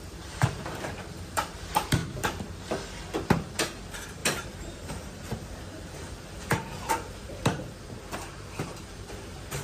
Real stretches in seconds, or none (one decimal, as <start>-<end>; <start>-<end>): 2.0-3.4